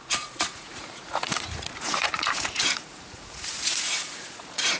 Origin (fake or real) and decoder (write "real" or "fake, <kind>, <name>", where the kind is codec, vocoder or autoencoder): fake, vocoder, Vocos